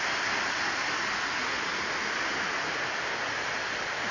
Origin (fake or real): real